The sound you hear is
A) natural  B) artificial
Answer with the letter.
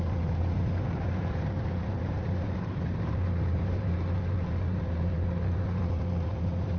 B